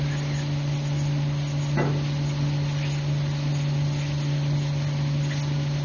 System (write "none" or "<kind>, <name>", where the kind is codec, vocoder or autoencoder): none